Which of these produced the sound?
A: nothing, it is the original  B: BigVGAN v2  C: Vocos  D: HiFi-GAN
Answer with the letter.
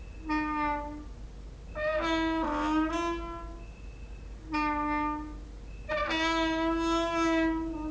A